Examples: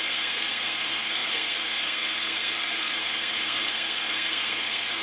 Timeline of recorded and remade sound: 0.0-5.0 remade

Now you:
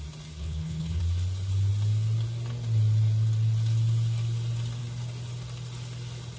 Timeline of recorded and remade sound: 0.0-0.4 recorded; 0.4-1.0 remade; 1.0-6.4 recorded

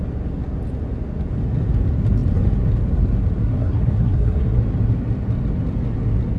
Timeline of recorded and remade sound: 0.0-3.4 recorded; 3.4-4.6 remade; 4.6-6.4 recorded

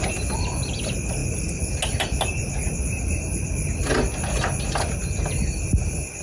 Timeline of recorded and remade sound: 0.0-6.2 recorded

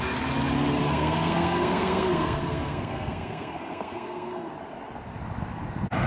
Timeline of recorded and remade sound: 0.0-0.8 recorded; 0.8-4.5 remade; 4.5-6.1 recorded